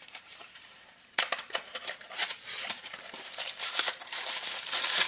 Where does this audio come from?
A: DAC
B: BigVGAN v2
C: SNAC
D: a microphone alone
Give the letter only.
B